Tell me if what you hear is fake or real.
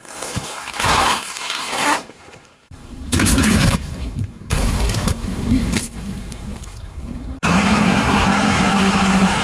fake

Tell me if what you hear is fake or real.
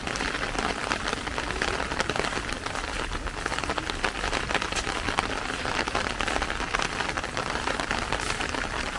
real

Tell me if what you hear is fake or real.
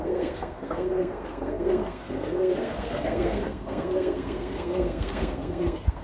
fake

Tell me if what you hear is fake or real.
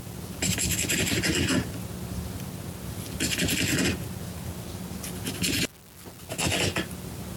real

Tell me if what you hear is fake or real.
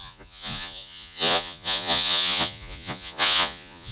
fake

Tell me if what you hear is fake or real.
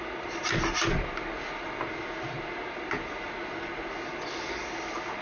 real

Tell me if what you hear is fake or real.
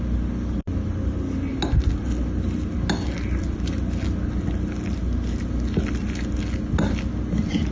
real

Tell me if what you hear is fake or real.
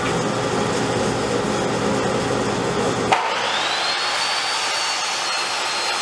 real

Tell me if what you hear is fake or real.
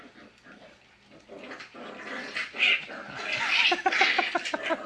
real